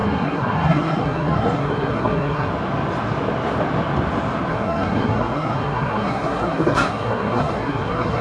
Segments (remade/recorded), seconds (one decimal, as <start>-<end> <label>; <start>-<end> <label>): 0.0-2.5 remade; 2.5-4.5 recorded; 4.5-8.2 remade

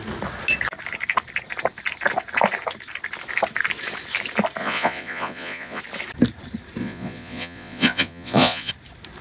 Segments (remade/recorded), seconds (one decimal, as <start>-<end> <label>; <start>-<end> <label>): 0.0-4.6 recorded; 4.6-5.8 remade; 5.8-6.8 recorded; 6.8-8.7 remade; 8.7-9.2 recorded

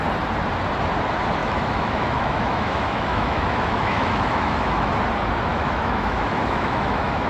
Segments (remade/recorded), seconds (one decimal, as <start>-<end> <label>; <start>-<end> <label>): 0.0-1.4 recorded; 1.4-4.9 remade; 4.9-5.5 recorded; 5.5-7.3 remade